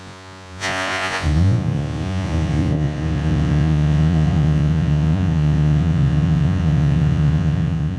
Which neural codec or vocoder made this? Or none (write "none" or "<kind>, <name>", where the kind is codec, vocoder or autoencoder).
vocoder, Vocos